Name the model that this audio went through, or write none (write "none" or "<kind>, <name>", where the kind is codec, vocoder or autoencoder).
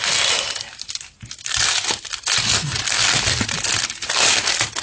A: none